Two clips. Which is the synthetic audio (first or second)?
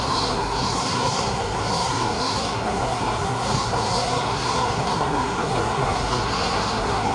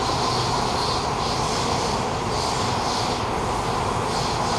first